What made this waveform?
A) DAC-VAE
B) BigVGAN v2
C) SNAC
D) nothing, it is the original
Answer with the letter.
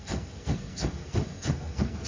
C